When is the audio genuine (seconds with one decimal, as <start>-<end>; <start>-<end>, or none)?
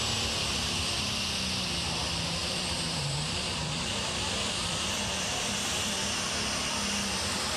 0.0-2.4; 6.3-7.6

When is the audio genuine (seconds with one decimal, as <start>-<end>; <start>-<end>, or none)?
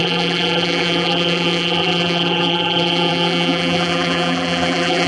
none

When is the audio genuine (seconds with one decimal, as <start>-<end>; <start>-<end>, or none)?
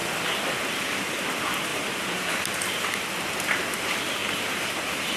0.0-1.7; 2.3-4.2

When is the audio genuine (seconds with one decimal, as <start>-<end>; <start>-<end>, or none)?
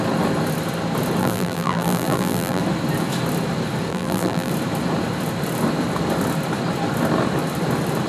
0.0-1.2; 2.6-3.9; 4.5-8.1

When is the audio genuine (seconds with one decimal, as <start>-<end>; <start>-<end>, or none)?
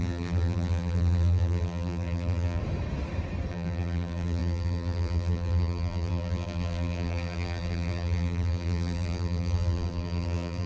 2.6-3.5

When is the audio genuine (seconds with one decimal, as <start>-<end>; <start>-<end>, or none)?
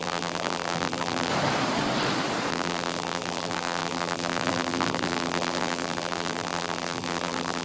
1.3-2.5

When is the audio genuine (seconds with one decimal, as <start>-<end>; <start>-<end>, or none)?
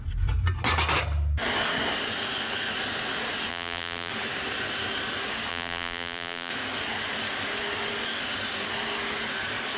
0.0-3.5; 4.1-5.5; 6.5-9.8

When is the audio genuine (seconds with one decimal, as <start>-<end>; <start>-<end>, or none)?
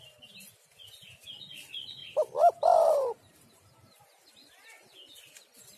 0.0-2.0; 4.3-5.8